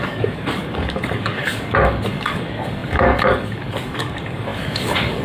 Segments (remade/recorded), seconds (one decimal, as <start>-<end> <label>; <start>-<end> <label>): 0.0-5.2 remade